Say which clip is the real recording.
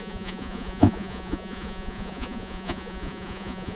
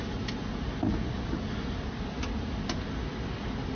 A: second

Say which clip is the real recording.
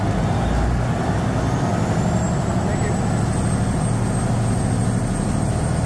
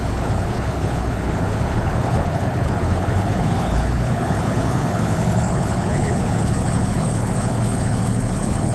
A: first